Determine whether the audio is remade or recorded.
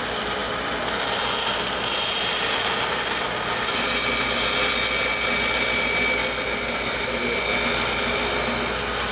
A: recorded